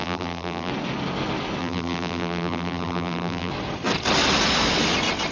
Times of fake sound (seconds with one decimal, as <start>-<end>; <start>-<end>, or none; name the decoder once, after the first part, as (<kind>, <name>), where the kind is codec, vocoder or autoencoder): 0.0-0.7 (vocoder, BigVGAN v2); 1.6-3.5